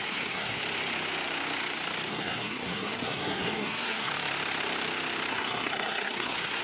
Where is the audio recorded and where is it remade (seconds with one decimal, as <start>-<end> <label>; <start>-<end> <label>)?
0.0-0.6 remade; 0.6-2.1 recorded; 2.1-4.1 remade; 4.1-5.3 recorded; 5.3-6.6 remade